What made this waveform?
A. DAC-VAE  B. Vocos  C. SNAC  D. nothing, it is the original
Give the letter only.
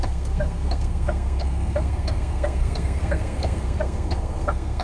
C